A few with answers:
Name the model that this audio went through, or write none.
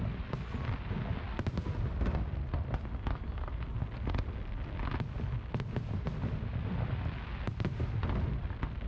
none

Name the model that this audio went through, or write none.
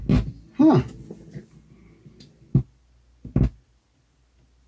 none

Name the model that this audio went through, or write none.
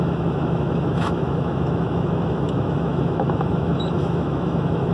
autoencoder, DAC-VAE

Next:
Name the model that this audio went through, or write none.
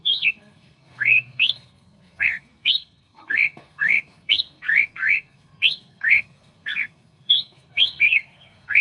codec, SNAC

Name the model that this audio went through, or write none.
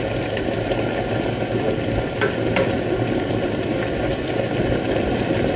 none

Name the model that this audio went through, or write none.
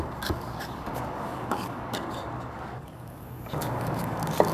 codec, DAC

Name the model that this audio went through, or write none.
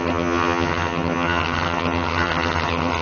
vocoder, HiFi-GAN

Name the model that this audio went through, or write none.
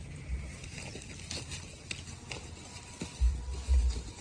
none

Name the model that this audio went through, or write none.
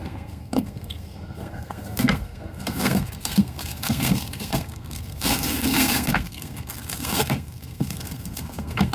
codec, SNAC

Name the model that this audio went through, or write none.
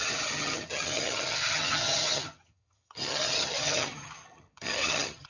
vocoder, HiFi-GAN